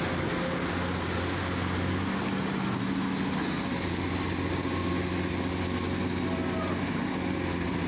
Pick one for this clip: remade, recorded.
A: recorded